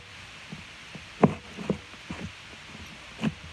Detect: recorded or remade recorded